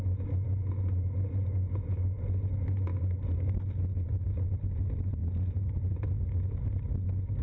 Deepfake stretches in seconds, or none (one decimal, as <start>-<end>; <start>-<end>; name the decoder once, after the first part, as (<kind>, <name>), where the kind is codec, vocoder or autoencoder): none